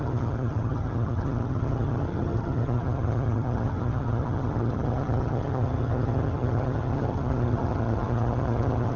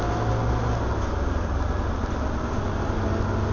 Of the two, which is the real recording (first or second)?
second